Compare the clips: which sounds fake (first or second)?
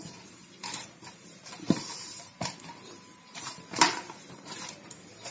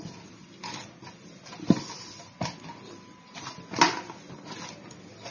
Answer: first